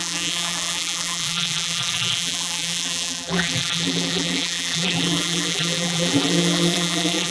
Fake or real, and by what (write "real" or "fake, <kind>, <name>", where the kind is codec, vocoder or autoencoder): fake, vocoder, BigVGAN v2